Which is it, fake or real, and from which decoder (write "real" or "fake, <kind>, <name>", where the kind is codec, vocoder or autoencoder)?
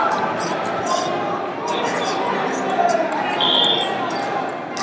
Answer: real